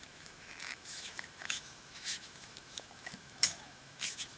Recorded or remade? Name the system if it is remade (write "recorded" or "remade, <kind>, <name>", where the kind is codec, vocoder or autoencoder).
remade, autoencoder, DAC-VAE